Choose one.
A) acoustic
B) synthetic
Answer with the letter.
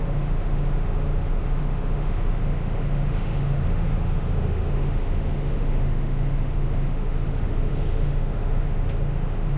B